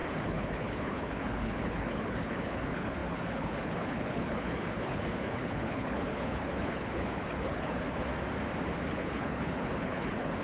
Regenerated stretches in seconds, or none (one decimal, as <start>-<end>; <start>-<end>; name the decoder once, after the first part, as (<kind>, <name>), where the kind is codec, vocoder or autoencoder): 0.0-8.1 (codec, HILCodec); 8.9-10.4